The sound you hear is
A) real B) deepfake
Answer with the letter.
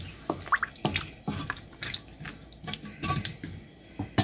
A